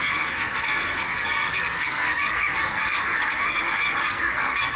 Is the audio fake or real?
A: fake